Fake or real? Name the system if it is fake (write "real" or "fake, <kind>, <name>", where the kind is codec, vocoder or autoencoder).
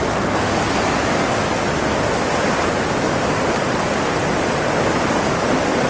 real